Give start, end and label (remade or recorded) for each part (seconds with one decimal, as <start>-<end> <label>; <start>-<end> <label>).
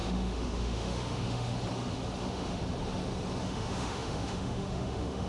0.0-1.5 remade; 1.5-2.2 recorded; 2.2-2.6 remade; 2.6-3.4 recorded; 3.4-5.3 remade